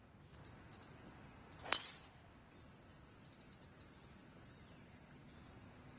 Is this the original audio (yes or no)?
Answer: yes